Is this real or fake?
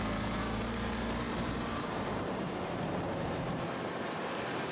fake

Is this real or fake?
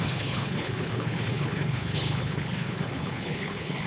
fake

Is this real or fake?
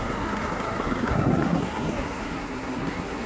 fake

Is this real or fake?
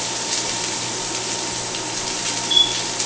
real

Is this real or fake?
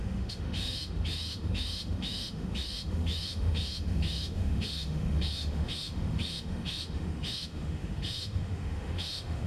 fake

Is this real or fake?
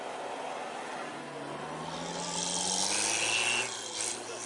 real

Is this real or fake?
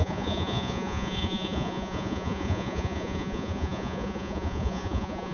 fake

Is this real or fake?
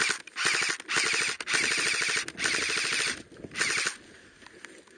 real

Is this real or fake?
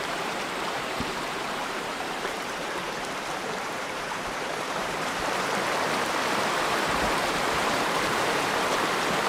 fake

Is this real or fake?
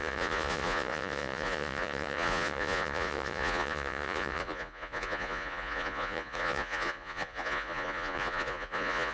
fake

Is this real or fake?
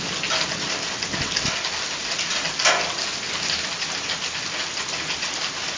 real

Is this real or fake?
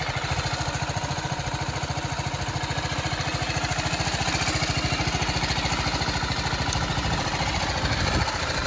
real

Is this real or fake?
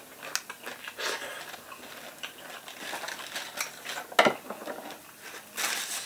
real